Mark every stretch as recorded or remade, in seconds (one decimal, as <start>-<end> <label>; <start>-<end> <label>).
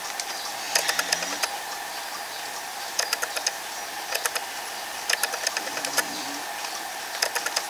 0.0-4.9 recorded; 4.9-6.2 remade; 6.2-7.7 recorded